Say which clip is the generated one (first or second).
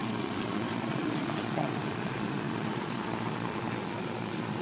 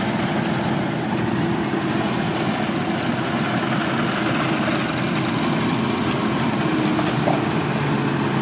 first